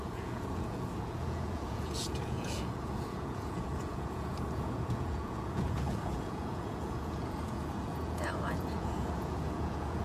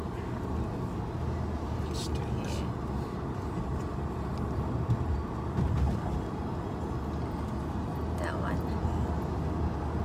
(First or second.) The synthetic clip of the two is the first